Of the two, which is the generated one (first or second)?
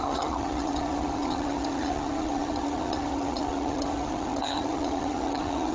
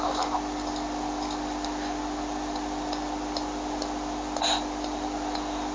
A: first